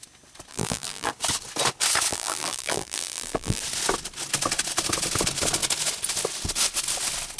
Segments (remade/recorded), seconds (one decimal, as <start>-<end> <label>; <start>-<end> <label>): 0.0-0.5 recorded; 0.5-1.1 remade; 1.1-2.1 recorded; 2.1-3.6 remade; 3.6-7.4 recorded